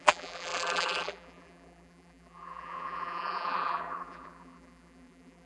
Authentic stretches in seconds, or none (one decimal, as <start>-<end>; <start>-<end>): none